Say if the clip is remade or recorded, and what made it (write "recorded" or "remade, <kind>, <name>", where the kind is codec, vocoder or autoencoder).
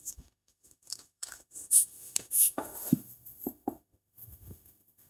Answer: remade, autoencoder, DAC-VAE